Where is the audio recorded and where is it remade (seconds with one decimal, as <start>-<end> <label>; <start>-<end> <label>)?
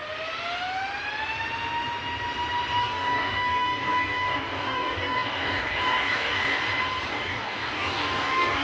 0.0-2.8 recorded; 2.8-6.6 remade; 6.6-7.1 recorded; 7.1-8.6 remade